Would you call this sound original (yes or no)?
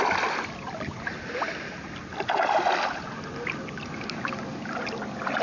yes